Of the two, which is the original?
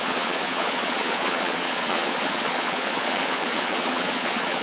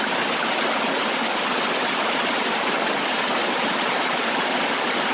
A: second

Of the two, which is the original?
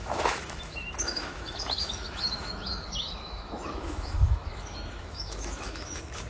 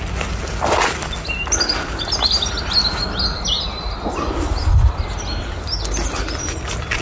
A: second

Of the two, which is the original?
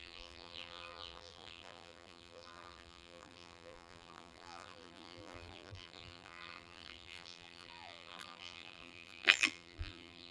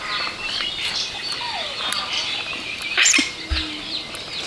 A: second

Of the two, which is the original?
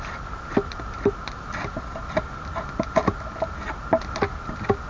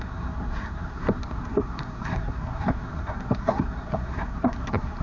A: first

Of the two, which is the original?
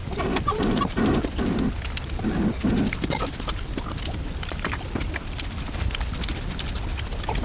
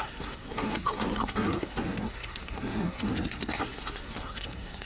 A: first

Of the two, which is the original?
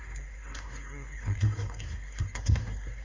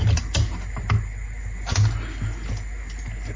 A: second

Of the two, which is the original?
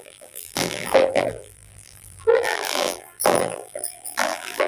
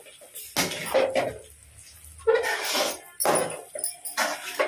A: second